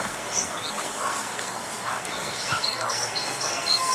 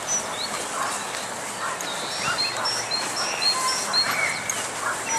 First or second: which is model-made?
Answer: first